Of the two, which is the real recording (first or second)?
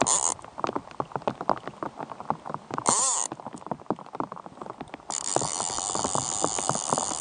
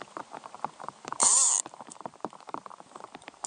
first